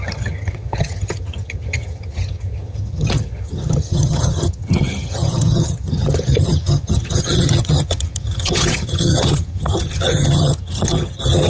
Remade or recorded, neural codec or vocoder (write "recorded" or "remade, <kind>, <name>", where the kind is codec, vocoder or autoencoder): remade, vocoder, HiFi-GAN